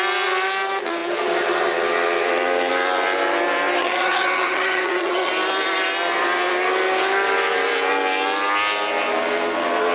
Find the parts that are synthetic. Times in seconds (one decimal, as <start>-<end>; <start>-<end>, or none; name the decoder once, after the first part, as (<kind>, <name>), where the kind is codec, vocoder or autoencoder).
3.8-5.3 (vocoder, HiFi-GAN)